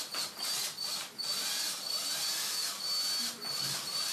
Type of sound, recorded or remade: recorded